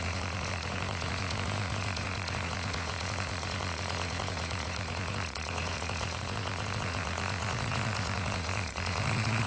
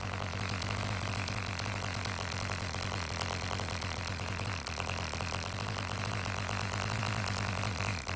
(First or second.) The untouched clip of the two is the second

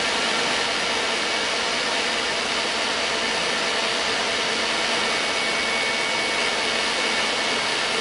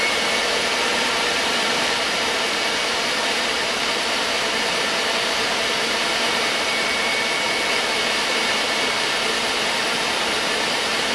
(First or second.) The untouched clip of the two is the first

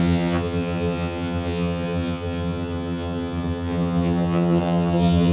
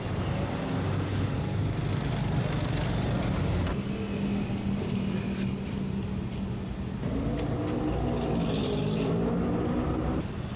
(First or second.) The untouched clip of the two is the second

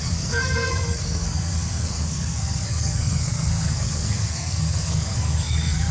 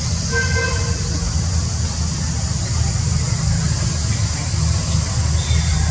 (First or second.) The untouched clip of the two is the second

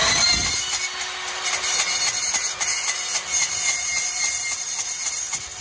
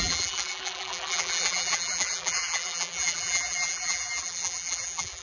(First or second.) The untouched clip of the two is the first